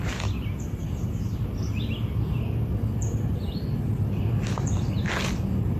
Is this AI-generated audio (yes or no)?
no